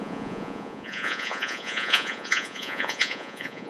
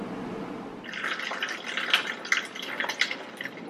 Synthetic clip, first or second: first